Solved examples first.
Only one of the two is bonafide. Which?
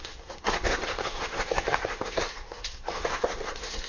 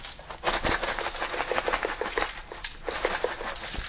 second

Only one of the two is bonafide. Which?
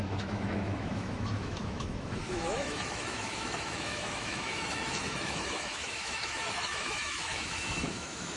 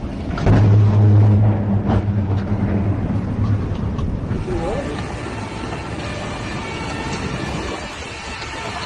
second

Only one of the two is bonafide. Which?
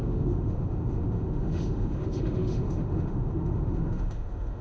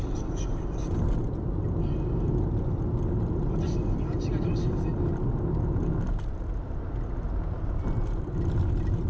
second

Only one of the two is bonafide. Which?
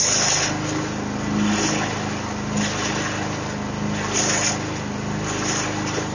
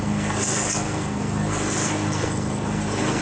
first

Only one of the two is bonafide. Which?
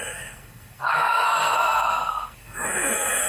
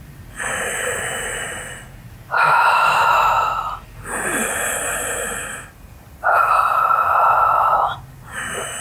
second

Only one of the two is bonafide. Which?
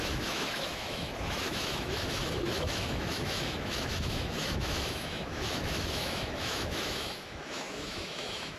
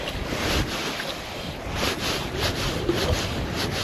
second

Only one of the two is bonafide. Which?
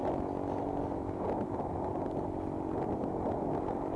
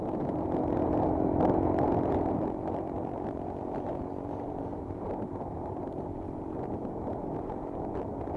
first